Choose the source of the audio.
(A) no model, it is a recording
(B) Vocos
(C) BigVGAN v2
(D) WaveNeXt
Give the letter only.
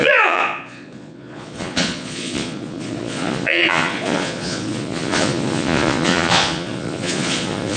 B